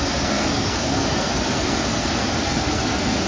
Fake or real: fake